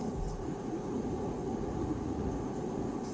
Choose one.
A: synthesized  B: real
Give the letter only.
A